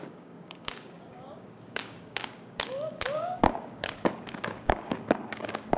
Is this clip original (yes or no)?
no